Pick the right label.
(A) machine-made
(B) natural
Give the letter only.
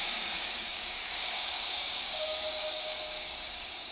A